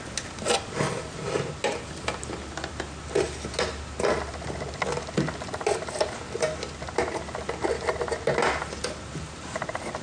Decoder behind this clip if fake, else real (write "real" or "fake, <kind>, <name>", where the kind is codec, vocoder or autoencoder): real